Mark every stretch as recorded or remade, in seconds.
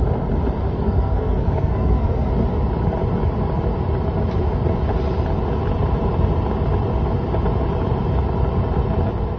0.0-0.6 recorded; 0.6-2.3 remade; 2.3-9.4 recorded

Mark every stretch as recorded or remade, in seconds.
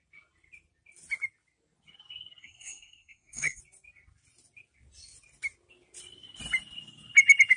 0.0-2.4 recorded; 2.4-3.6 remade; 3.6-7.6 recorded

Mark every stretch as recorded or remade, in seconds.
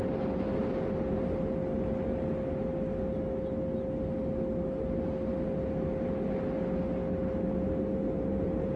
0.0-8.8 recorded